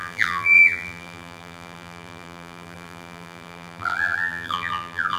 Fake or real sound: fake